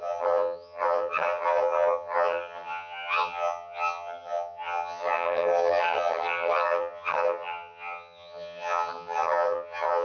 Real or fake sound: fake